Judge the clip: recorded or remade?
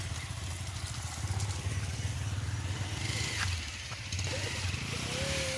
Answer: recorded